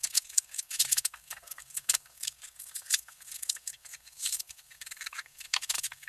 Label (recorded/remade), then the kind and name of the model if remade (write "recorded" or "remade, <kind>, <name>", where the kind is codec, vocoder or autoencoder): remade, codec, SNAC